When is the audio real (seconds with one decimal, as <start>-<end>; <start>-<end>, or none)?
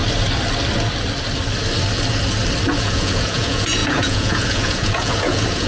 0.0-2.8